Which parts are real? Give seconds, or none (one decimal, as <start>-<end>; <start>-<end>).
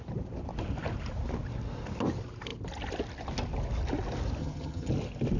0.0-4.4; 4.9-5.4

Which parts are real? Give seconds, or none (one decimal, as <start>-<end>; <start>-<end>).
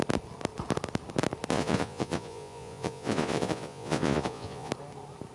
0.0-1.5; 4.7-5.3